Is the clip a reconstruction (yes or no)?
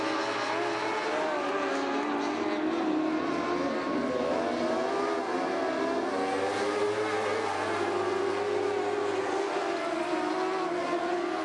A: no